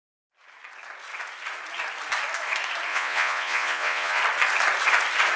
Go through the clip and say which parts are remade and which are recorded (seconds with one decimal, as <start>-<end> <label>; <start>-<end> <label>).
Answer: 0.0-2.9 recorded; 2.9-4.2 remade; 4.2-5.4 recorded